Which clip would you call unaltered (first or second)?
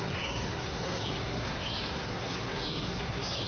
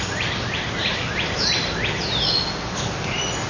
second